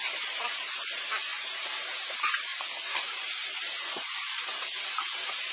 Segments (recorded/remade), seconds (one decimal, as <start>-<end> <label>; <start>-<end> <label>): 0.0-5.5 remade